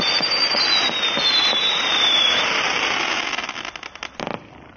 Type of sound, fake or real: real